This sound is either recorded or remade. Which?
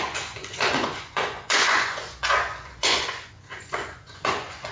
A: remade